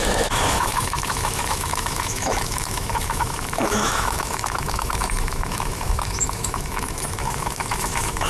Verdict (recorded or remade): remade